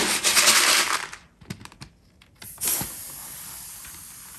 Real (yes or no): yes